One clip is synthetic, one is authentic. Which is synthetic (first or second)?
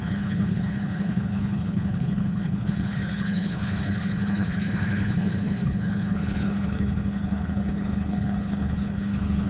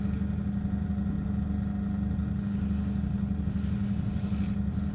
first